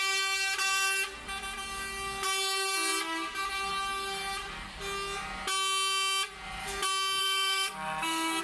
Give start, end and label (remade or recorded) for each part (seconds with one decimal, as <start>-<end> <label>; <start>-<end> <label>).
0.0-7.2 recorded; 7.2-8.4 remade

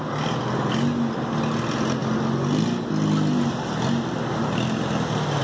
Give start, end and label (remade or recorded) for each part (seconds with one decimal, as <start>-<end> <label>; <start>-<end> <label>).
0.0-5.4 recorded

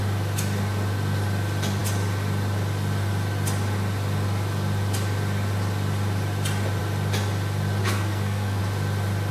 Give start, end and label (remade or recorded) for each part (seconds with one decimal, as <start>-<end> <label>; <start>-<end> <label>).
0.0-7.8 recorded; 7.8-8.6 remade; 8.6-9.3 recorded

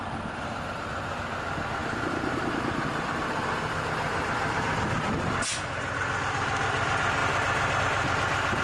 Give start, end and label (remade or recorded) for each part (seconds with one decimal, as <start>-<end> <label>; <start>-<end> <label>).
0.0-8.6 recorded